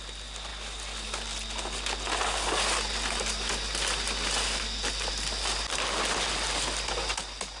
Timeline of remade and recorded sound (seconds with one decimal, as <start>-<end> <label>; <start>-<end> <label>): 0.0-7.6 recorded